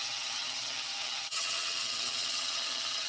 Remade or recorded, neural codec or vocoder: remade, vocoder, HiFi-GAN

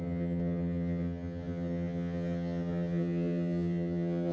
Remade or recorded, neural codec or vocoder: remade, vocoder, HiFi-GAN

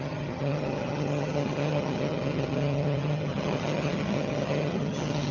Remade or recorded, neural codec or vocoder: remade, vocoder, HiFi-GAN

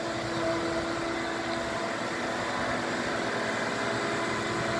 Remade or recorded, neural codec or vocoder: recorded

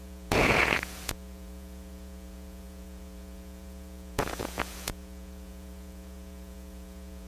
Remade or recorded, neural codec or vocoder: remade, vocoder, Vocos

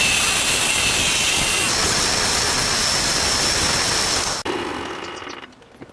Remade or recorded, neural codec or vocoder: recorded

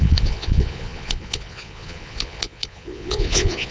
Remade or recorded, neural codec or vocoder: remade, vocoder, Vocos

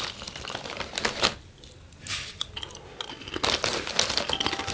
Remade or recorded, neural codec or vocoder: recorded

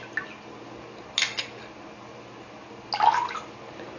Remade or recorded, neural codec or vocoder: recorded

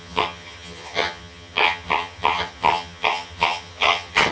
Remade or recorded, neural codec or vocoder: remade, vocoder, HiFi-GAN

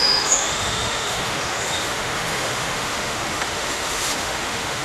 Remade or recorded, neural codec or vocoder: remade, autoencoder, DAC-VAE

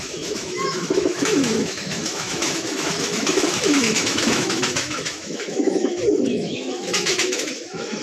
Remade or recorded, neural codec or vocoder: remade, autoencoder, DAC-VAE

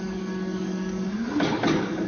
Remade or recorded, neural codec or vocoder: remade, codec, DAC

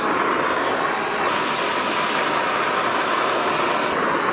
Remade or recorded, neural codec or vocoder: recorded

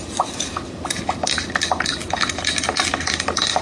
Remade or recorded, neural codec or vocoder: recorded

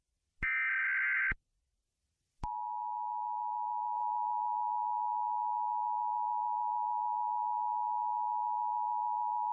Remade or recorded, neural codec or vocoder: recorded